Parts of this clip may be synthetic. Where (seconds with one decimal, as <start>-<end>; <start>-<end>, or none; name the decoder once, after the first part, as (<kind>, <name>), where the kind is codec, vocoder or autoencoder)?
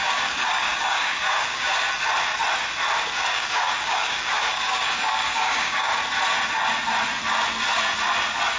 0.0-1.7 (codec, DAC); 3.1-5.9